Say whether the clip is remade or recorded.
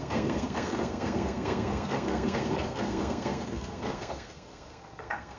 remade